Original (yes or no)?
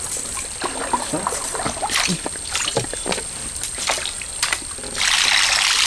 yes